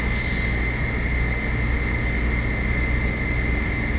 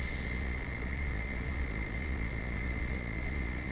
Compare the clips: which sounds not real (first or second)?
second